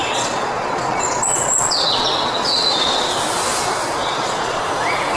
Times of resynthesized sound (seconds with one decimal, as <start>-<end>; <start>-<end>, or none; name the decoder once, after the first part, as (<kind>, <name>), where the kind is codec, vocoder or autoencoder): 0.0-3.1 (vocoder, Vocos); 4.0-4.6